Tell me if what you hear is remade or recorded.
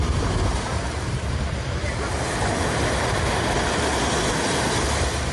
recorded